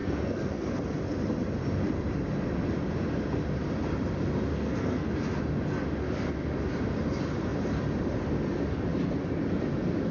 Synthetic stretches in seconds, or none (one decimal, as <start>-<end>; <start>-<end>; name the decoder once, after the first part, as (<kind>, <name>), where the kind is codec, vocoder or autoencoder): 0.0-0.7 (codec, SNAC); 4.5-5.1